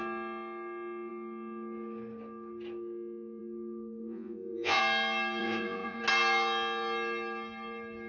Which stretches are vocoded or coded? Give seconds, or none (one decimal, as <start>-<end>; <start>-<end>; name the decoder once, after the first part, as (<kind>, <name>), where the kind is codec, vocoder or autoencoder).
4.0-4.8 (vocoder, Vocos); 5.4-6.0